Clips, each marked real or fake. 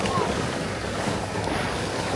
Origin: fake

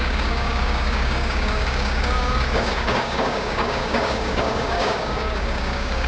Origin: fake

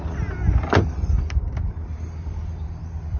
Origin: real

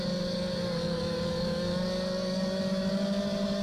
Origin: fake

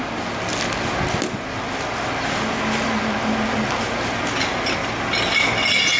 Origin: real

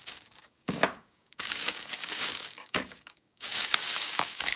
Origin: fake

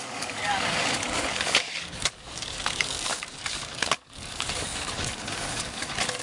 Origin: fake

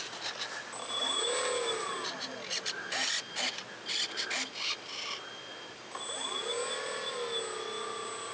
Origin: real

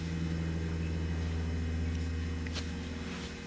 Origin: real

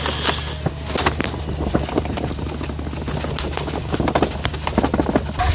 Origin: real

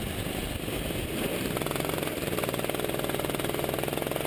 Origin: real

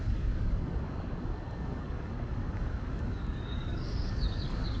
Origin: fake